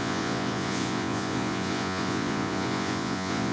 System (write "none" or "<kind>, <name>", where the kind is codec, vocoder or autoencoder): vocoder, Vocos